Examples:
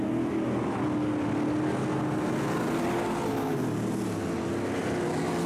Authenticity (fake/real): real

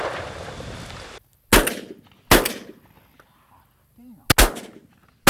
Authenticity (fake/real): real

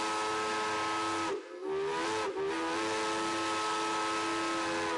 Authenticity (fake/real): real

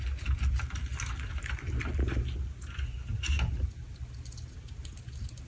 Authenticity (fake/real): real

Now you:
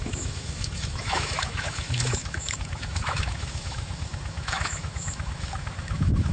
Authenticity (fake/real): fake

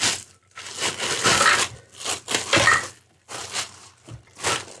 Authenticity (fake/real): real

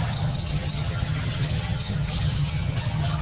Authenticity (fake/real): fake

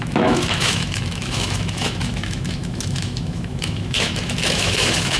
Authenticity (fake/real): fake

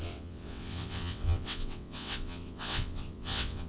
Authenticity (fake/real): fake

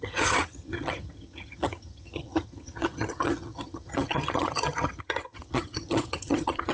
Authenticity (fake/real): fake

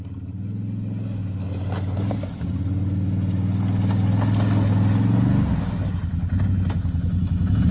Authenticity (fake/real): real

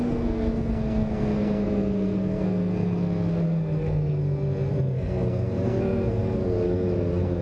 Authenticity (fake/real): fake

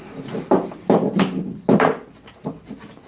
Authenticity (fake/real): real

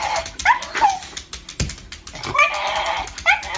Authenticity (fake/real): real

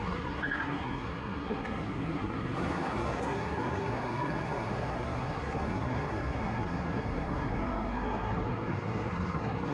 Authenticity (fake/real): fake